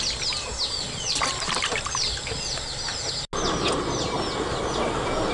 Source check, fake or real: real